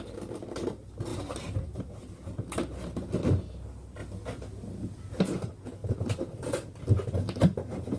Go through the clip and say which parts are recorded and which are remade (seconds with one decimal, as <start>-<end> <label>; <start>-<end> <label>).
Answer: 0.0-1.1 recorded; 1.1-1.8 remade; 1.8-5.8 recorded; 5.8-6.8 remade; 6.8-8.0 recorded